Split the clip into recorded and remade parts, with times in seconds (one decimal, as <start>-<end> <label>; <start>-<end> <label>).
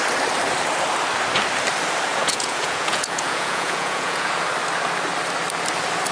0.0-2.1 recorded; 2.1-4.3 remade; 4.3-6.1 recorded